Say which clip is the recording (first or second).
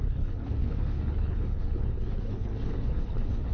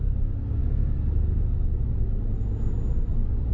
second